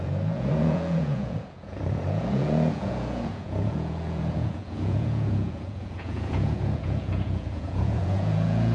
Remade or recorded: remade